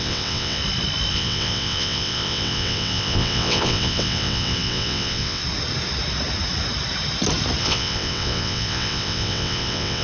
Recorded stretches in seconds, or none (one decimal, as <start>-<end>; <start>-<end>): 0.6-1.1; 5.4-7.6